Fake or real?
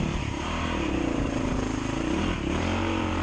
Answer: fake